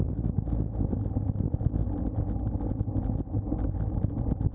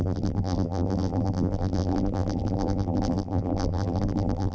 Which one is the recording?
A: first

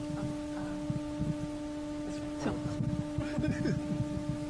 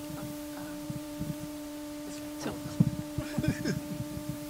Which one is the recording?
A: first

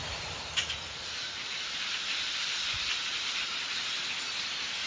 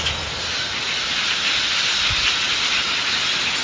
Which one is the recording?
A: second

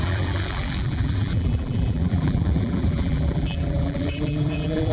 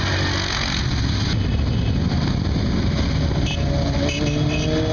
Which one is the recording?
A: second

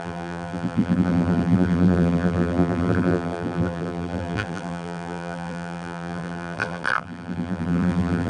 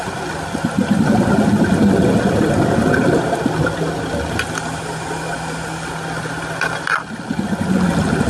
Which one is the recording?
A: second